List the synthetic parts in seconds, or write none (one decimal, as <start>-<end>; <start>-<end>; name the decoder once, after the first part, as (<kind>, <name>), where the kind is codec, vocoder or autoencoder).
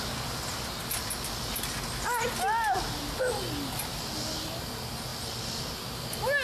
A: none